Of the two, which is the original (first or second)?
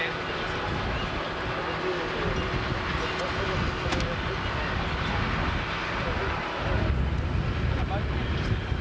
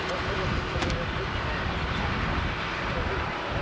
first